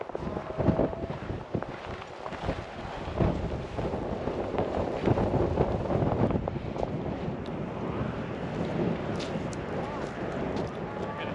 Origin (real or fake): real